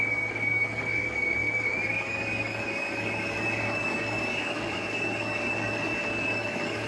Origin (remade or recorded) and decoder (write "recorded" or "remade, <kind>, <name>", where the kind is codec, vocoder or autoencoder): remade, codec, DAC